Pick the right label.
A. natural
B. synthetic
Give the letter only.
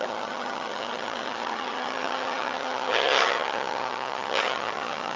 B